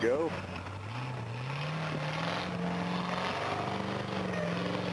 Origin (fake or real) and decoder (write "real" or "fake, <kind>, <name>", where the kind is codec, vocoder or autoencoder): real